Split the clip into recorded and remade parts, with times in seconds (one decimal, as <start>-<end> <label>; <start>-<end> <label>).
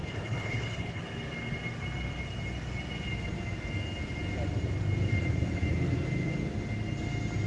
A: 0.0-1.0 remade; 1.0-7.5 recorded